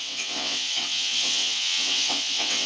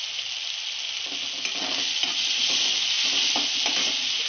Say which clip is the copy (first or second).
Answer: first